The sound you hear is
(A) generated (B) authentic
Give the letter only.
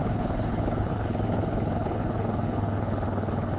A